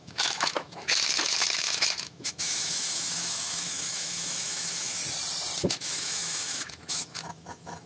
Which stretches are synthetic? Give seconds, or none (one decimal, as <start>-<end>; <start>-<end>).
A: 0.0-5.0; 5.6-7.9